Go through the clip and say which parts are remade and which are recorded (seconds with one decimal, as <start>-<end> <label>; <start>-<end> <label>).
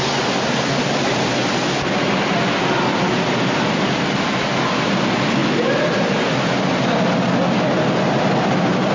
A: 0.0-8.9 recorded